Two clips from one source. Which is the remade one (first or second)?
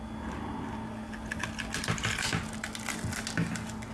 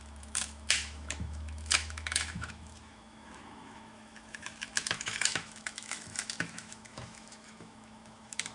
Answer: second